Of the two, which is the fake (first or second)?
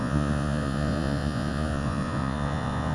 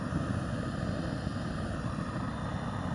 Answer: first